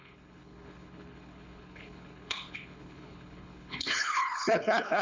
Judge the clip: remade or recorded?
remade